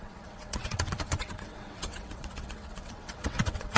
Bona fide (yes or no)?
no